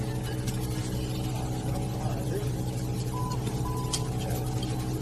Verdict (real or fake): real